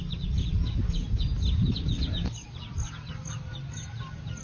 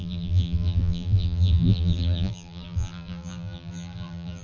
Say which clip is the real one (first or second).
first